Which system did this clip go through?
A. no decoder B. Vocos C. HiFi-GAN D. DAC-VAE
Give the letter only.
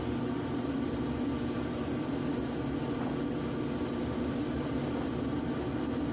A